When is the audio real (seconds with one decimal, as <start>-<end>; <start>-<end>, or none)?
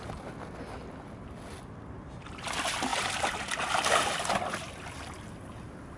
0.0-6.0